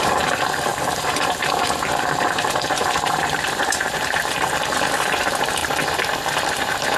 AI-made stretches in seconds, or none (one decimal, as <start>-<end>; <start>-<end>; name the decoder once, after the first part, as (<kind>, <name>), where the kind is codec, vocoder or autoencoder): 0.0-5.6 (vocoder, BigVGAN v2)